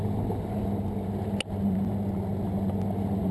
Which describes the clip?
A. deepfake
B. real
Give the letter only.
B